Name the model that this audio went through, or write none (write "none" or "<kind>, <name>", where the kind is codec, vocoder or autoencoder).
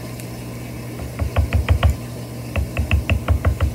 none